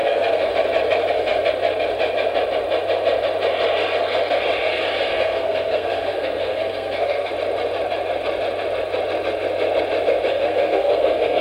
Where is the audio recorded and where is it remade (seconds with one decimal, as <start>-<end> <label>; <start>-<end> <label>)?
0.0-0.5 remade; 0.5-5.1 recorded; 5.1-7.3 remade; 7.3-10.3 recorded; 10.3-11.4 remade